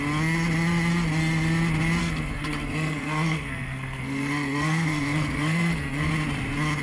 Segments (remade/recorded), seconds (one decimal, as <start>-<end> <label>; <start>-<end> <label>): 0.0-2.0 recorded; 2.0-6.1 remade; 6.1-6.8 recorded